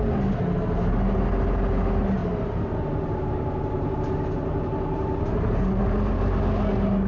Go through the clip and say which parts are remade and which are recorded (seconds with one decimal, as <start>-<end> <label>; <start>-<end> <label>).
0.0-2.2 recorded; 2.2-6.4 remade; 6.4-7.1 recorded

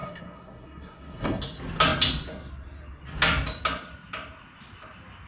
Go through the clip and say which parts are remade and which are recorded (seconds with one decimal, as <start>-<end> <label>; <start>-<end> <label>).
0.0-1.4 remade; 1.4-5.3 recorded

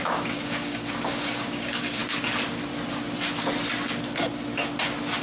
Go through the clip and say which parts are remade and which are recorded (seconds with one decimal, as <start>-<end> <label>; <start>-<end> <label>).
0.0-2.0 remade; 2.0-5.2 recorded

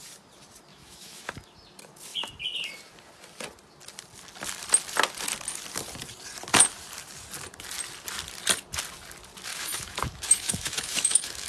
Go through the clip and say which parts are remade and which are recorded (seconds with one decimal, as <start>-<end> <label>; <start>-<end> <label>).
0.0-0.7 recorded; 0.7-1.3 remade; 1.3-9.5 recorded; 9.5-11.5 remade

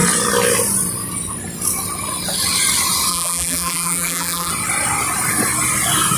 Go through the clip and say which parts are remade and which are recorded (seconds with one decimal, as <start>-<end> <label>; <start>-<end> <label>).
0.0-3.1 recorded; 3.1-4.5 remade; 4.5-6.2 recorded

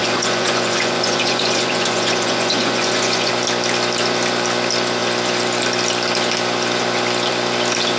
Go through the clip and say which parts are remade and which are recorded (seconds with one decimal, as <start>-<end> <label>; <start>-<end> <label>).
0.0-3.3 remade; 3.3-8.0 recorded

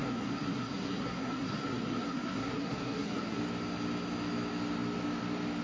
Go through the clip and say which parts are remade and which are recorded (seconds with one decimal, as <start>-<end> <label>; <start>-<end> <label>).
0.0-3.4 remade; 3.4-5.6 recorded